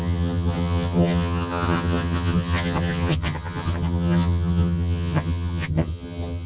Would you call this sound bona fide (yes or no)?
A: no